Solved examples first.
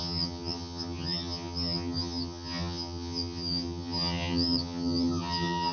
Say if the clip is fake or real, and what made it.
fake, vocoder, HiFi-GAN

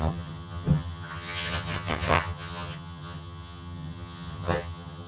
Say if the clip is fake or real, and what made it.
fake, vocoder, HiFi-GAN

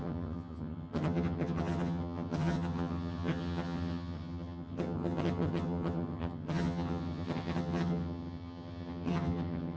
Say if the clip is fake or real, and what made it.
fake, vocoder, HiFi-GAN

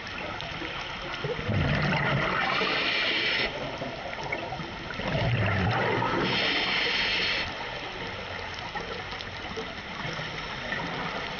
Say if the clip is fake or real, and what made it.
real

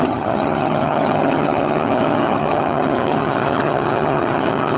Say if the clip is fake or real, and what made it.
fake, vocoder, HiFi-GAN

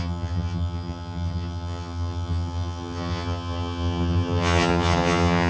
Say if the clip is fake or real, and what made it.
fake, vocoder, HiFi-GAN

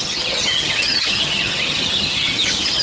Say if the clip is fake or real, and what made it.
fake, vocoder, HiFi-GAN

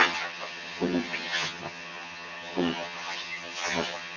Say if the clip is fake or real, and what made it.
fake, vocoder, HiFi-GAN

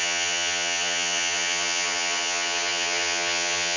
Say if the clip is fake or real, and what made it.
fake, vocoder, HiFi-GAN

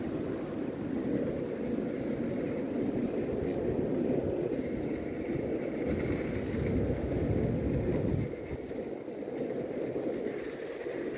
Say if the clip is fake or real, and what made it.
real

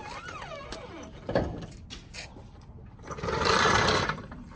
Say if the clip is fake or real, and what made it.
real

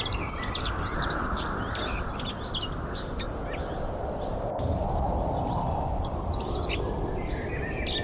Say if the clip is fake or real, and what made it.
real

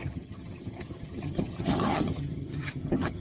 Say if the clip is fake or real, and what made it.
fake, vocoder, HiFi-GAN